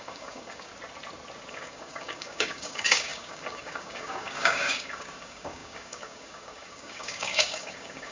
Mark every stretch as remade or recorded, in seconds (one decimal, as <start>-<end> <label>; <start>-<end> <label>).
0.0-0.7 remade; 0.7-1.5 recorded; 1.5-8.1 remade